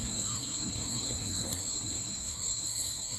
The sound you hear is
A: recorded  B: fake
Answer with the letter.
B